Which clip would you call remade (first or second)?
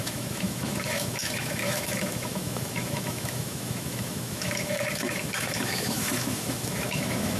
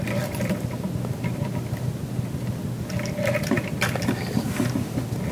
first